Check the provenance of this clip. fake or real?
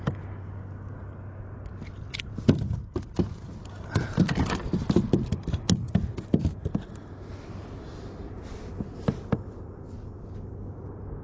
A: real